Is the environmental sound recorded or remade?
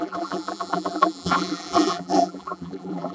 remade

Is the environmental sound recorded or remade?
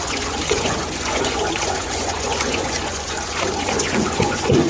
remade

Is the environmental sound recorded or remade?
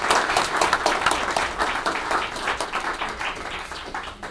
recorded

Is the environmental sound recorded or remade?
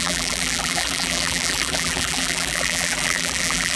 remade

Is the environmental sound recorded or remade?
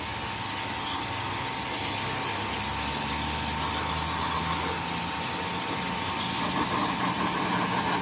recorded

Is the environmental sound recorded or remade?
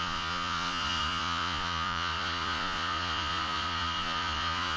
remade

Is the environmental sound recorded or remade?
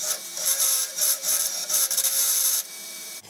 remade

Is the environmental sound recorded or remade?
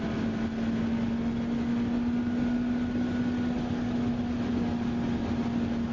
recorded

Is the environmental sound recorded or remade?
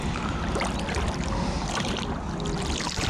recorded